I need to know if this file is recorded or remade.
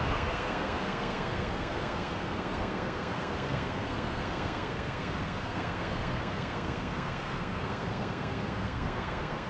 remade